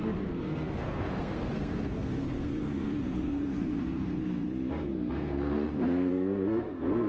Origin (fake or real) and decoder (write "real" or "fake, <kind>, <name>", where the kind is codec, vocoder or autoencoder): fake, codec, SNAC